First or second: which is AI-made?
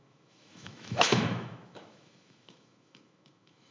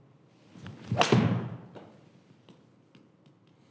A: first